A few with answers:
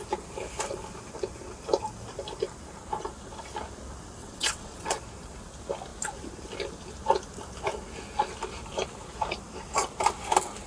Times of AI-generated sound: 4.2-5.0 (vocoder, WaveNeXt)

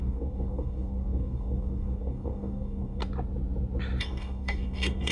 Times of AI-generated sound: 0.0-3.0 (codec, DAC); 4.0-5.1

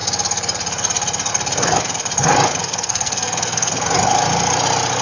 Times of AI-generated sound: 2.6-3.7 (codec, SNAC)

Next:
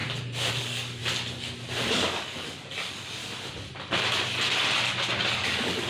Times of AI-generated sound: 0.5-1.0 (codec, DAC); 1.9-3.2; 5.3-5.9